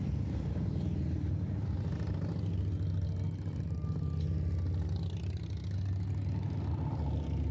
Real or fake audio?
real